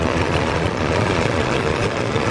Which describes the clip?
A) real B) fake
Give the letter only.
B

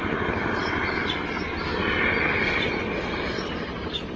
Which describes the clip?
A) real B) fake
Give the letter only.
A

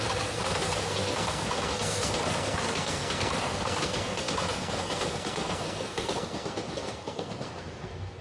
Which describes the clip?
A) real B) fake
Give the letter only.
B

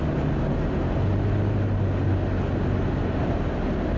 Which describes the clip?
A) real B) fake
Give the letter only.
A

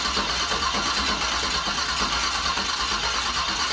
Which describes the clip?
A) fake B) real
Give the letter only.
B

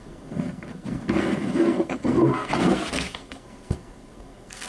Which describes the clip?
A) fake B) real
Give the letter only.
A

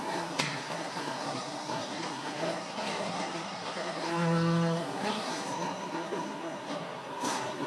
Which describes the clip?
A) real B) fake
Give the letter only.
B